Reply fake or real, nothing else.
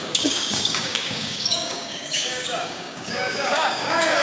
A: fake